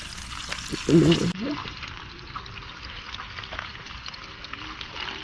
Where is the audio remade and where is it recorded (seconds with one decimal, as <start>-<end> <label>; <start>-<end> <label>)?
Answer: 0.0-1.2 recorded; 1.2-4.3 remade; 4.3-5.2 recorded

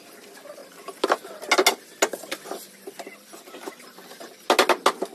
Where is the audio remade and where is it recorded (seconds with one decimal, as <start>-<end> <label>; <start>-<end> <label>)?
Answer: 0.0-5.1 recorded

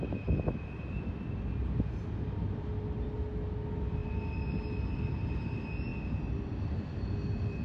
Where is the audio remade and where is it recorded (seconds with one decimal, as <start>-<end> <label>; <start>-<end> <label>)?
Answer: 0.0-7.6 recorded

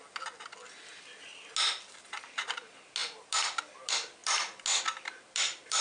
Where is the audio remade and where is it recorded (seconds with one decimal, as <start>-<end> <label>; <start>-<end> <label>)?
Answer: 0.0-5.8 recorded

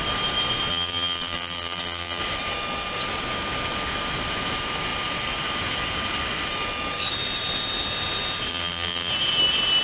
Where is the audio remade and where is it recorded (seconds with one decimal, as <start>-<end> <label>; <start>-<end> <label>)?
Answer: 0.0-0.7 recorded; 0.7-2.2 remade; 2.2-8.5 recorded; 8.5-9.1 remade; 9.1-9.8 recorded

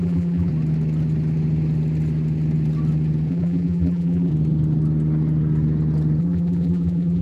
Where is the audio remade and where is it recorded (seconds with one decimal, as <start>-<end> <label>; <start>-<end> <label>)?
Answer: 0.0-0.5 remade; 0.5-3.3 recorded; 3.3-4.3 remade; 4.3-6.2 recorded; 6.2-7.2 remade